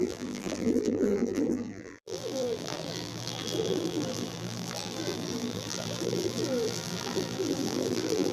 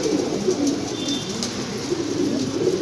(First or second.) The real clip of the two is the second